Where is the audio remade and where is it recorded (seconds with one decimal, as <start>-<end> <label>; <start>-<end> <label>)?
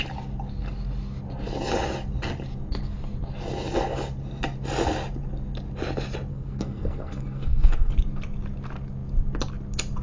0.0-6.3 recorded; 6.3-7.9 remade; 7.9-10.0 recorded